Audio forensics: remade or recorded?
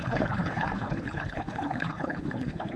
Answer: remade